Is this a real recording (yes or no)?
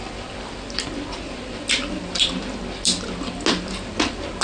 yes